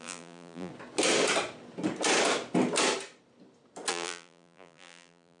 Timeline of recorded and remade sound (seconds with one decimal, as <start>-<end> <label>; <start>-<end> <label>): 0.0-0.7 remade; 0.7-3.9 recorded; 3.9-5.4 remade